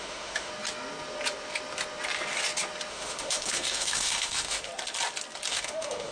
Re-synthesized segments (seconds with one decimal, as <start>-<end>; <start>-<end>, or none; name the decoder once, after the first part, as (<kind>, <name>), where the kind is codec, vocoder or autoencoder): 0.0-0.5 (autoencoder, DAC-VAE); 2.9-4.7; 5.5-6.1